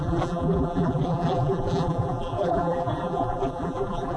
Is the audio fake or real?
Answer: fake